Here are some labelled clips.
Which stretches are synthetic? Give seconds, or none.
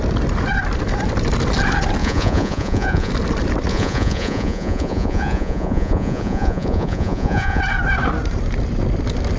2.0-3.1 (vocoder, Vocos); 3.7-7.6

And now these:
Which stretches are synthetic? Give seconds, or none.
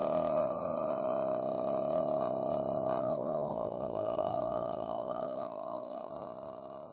3.0-6.1 (codec, SNAC)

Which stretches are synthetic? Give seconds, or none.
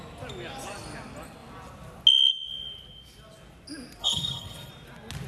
4.0-4.7 (codec, HILCodec)